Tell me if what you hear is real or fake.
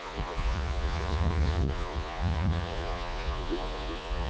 fake